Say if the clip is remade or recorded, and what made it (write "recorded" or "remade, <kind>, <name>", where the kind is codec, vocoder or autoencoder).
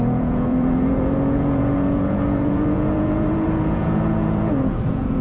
remade, vocoder, Vocos